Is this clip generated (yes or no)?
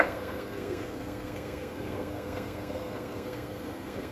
yes